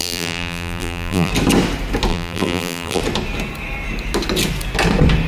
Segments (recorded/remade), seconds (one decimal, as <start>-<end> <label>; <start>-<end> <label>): 0.0-1.3 remade; 1.3-2.1 recorded; 2.1-3.0 remade; 3.0-5.3 recorded